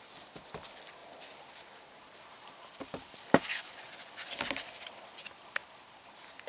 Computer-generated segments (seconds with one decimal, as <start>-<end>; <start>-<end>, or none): 3.5-4.3